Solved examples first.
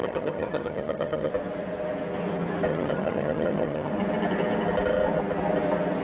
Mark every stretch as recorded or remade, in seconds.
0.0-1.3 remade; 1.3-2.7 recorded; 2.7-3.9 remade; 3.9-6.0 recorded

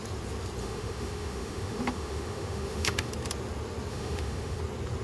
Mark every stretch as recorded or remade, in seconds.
0.0-0.6 recorded; 0.6-3.1 remade; 3.1-3.9 recorded; 3.9-4.6 remade; 4.6-5.0 recorded

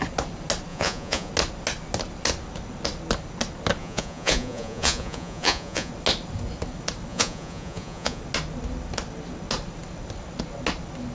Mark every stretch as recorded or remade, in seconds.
0.0-0.7 recorded; 0.7-1.3 remade; 1.3-3.8 recorded; 3.8-5.9 remade; 5.9-7.1 recorded; 7.1-8.2 remade; 8.2-11.1 recorded

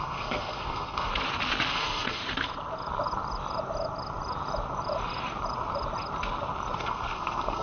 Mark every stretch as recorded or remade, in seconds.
0.0-1.1 remade; 1.1-1.7 recorded; 1.7-2.2 remade; 2.2-6.8 recorded; 6.8-7.6 remade

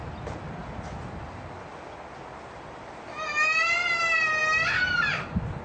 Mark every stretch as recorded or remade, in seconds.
0.0-5.6 recorded